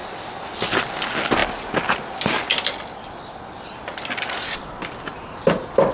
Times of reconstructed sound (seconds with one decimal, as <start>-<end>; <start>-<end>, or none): none